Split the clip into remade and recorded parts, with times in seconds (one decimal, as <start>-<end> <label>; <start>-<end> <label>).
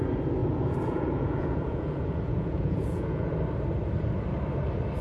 0.0-0.4 recorded; 0.4-3.4 remade; 3.4-5.0 recorded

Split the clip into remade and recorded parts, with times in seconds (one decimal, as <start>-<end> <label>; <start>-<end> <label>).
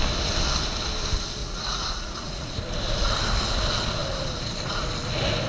0.0-1.4 recorded; 1.4-2.5 remade; 2.5-5.5 recorded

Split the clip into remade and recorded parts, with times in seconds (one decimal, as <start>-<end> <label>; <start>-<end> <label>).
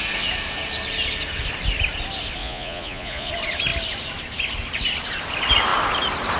0.0-2.4 recorded; 2.4-3.3 remade; 3.3-6.4 recorded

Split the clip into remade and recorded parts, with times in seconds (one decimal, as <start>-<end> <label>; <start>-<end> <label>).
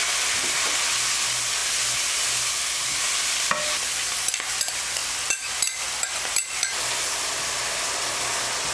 0.0-8.7 recorded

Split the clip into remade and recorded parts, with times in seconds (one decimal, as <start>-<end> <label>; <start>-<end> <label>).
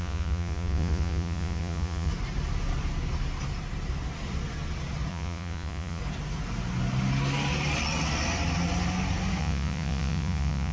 0.0-2.1 remade; 2.1-5.1 recorded; 5.1-6.0 remade; 6.0-9.4 recorded; 9.4-10.7 remade